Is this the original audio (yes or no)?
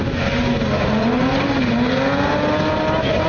yes